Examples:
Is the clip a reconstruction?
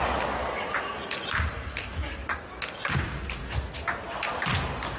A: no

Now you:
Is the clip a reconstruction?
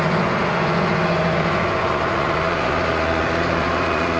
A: yes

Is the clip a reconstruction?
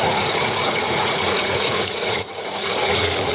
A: yes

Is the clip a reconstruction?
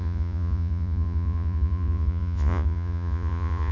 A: yes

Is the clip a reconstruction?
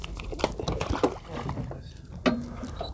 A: no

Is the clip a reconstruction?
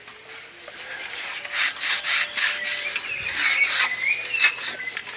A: no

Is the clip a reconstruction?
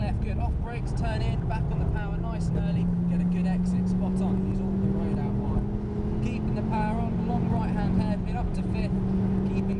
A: no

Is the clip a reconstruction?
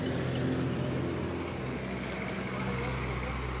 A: no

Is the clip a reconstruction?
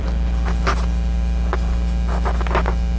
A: no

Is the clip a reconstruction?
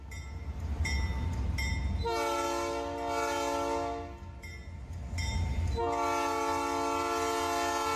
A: no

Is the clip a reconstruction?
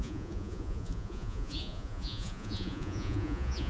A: yes